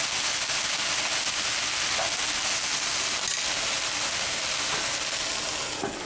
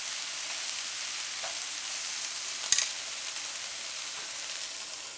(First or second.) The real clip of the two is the first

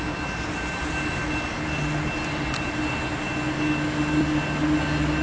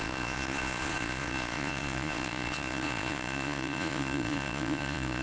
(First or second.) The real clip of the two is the first